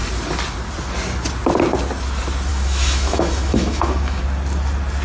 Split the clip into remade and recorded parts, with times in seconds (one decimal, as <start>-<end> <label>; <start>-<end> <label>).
0.0-2.5 recorded; 2.5-4.2 remade; 4.2-5.0 recorded

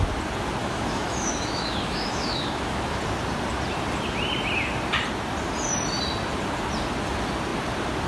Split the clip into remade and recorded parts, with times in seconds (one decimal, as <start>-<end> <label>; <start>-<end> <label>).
0.0-0.6 recorded; 0.6-3.0 remade; 3.0-8.1 recorded

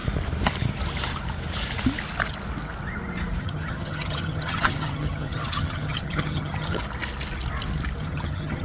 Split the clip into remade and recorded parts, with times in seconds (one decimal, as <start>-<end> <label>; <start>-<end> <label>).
0.0-3.4 recorded; 3.4-6.8 remade; 6.8-8.0 recorded; 8.0-8.6 remade

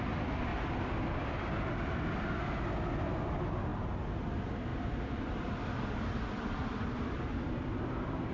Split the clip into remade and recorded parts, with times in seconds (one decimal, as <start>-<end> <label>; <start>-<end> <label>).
0.0-0.5 recorded; 0.5-2.3 remade; 2.3-3.7 recorded; 3.7-4.3 remade; 4.3-4.7 recorded; 4.7-8.3 remade

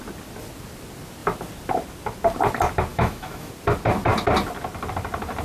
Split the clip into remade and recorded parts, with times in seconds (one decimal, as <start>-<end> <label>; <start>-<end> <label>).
0.0-2.9 recorded; 2.9-3.5 remade; 3.5-5.4 recorded

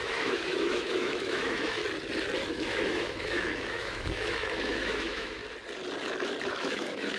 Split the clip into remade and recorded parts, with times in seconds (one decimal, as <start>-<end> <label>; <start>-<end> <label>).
0.0-1.8 remade; 1.8-2.5 recorded; 2.5-5.4 remade; 5.4-6.4 recorded; 6.4-7.2 remade

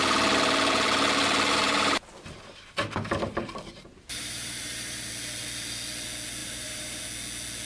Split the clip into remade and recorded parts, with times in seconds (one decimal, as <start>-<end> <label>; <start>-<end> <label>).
0.0-1.5 recorded; 1.5-5.1 remade; 5.1-6.4 recorded; 6.4-7.0 remade; 7.0-7.6 recorded